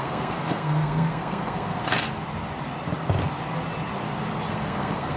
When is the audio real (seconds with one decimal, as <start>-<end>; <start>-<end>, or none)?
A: 1.8-4.5